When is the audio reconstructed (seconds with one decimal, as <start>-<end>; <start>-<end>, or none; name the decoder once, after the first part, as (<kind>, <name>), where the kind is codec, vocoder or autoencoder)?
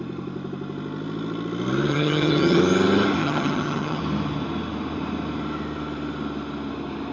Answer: 1.9-2.6 (vocoder, HiFi-GAN); 3.2-4.0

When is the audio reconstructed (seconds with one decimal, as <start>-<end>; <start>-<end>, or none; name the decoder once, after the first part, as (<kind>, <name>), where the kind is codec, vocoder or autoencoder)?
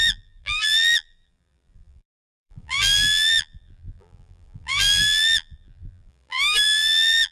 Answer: 0.0-7.3 (vocoder, BigVGAN v2)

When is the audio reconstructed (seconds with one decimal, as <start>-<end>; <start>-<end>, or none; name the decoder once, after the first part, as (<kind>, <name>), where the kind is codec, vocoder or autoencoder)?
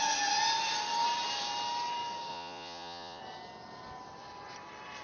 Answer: 2.3-3.2 (vocoder, Vocos)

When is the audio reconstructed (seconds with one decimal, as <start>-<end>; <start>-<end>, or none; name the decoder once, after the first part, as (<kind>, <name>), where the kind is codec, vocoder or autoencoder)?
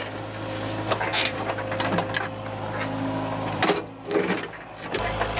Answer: none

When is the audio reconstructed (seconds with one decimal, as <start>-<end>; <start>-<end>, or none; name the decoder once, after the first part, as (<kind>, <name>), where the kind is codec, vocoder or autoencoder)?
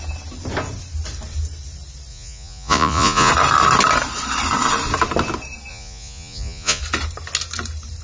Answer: 2.1-3.3 (vocoder, Vocos); 5.7-6.8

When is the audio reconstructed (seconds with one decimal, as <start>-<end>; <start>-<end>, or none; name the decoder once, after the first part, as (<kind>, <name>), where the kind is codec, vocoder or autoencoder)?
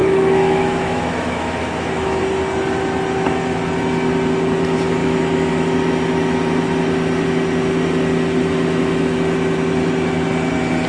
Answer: 0.0-2.2 (autoencoder, DAC-VAE); 5.0-5.5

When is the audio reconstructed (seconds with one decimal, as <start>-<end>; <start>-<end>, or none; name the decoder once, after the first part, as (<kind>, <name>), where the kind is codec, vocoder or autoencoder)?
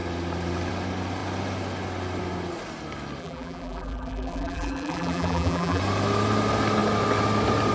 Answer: 3.2-5.8 (vocoder, BigVGAN v2)